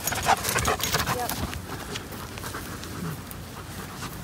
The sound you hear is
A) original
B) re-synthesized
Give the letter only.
A